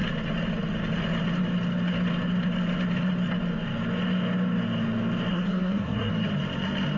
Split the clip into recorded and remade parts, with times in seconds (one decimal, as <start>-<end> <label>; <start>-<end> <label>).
0.0-5.3 recorded; 5.3-6.1 remade; 6.1-7.0 recorded

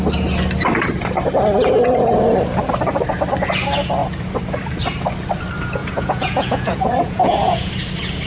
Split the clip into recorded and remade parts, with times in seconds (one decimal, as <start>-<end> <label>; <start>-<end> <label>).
0.0-5.8 recorded; 5.8-7.7 remade; 7.7-8.3 recorded